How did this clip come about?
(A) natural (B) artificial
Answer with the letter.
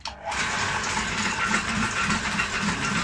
A